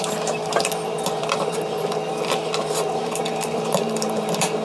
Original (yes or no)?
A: no